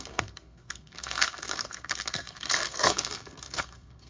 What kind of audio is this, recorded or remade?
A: remade